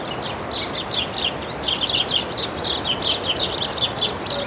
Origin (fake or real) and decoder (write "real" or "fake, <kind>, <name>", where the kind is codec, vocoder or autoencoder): real